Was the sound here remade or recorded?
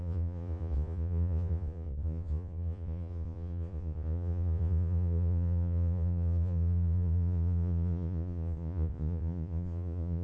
remade